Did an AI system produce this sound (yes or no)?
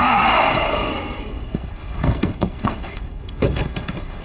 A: yes